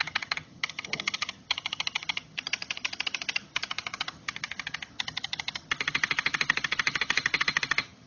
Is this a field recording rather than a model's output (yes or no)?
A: no